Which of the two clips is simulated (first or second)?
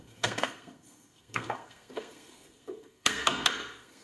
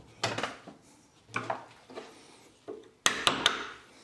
first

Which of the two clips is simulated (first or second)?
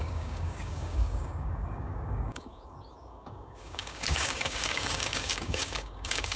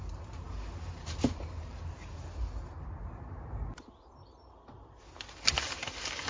first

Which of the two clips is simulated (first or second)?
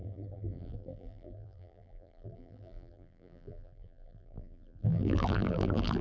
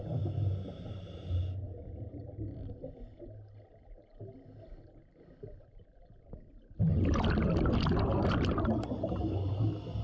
first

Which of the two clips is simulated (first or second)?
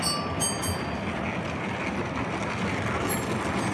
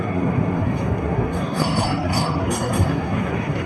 second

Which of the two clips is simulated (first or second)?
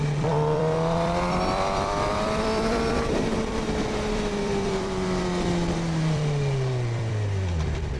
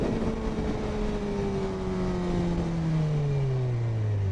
first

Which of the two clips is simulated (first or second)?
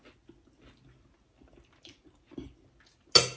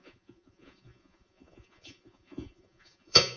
second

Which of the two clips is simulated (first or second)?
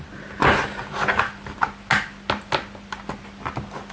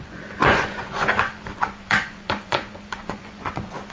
second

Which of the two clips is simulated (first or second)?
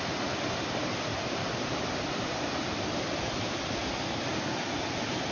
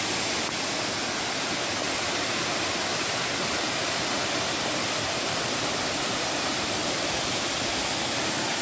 second